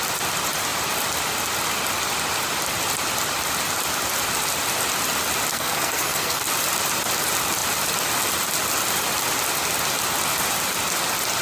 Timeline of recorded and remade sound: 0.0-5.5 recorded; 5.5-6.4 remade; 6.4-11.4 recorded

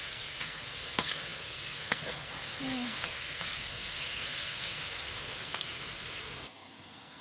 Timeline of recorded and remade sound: 0.0-7.2 remade

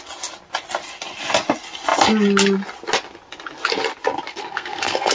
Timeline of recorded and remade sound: 0.0-4.3 recorded; 4.3-5.1 remade

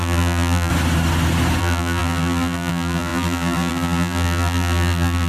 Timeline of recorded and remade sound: 0.0-0.7 remade; 0.7-1.6 recorded; 1.6-5.3 remade

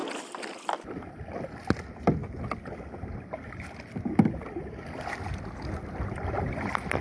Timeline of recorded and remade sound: 0.0-7.0 recorded

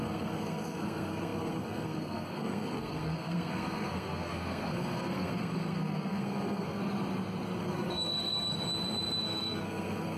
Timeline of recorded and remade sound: 0.0-6.8 remade; 6.8-7.6 recorded; 7.6-8.5 remade; 8.5-9.2 recorded; 9.2-10.2 remade

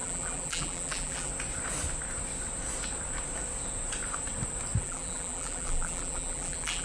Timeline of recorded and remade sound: 0.0-1.3 remade; 1.3-4.8 recorded; 4.8-6.8 remade